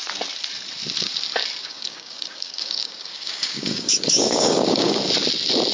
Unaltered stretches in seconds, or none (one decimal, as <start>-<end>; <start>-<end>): 0.0-1.6; 5.0-5.7